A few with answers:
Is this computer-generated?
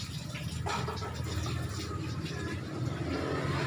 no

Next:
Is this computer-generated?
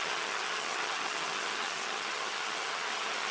yes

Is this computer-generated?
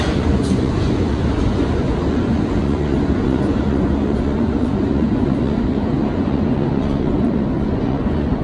yes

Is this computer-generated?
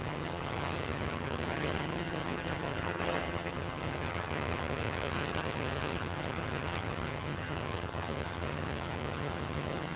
yes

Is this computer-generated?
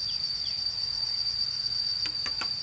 yes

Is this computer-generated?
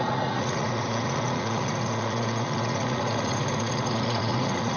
yes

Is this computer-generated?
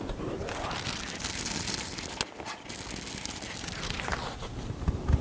no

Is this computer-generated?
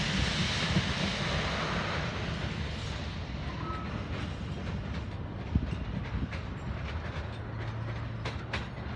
no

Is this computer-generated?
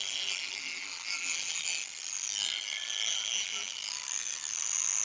no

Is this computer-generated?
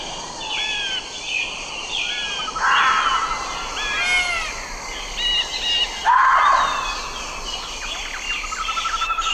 no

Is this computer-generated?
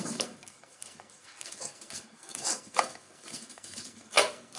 yes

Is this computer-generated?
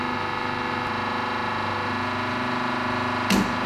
no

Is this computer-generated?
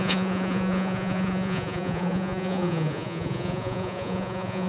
yes